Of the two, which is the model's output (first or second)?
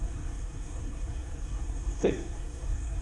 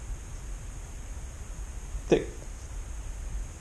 first